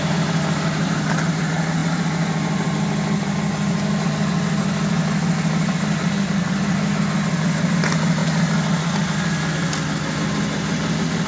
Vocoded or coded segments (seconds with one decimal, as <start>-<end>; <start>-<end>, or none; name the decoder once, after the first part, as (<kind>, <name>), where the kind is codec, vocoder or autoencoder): none